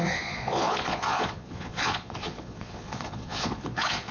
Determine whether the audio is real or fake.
fake